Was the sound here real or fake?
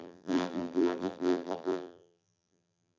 fake